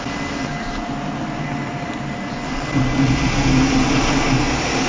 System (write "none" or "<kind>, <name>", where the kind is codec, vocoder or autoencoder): none